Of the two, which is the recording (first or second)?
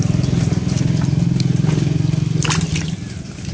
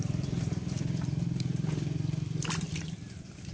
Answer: first